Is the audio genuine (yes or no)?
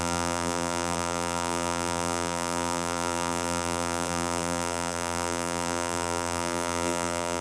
no